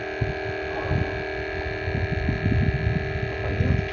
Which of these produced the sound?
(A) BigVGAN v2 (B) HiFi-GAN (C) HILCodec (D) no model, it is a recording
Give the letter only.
D